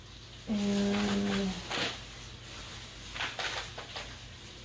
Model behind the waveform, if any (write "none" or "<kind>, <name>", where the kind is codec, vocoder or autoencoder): none